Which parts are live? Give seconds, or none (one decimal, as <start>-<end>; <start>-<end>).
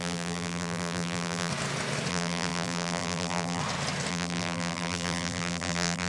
1.5-2.1; 3.6-4.1